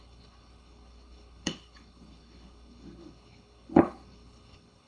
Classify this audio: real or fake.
fake